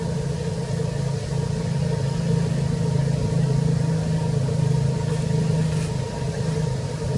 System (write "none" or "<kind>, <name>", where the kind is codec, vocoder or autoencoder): none